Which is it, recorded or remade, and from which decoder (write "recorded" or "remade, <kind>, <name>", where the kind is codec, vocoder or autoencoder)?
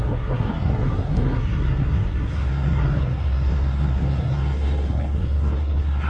remade, codec, SNAC